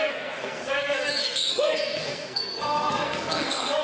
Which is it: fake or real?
fake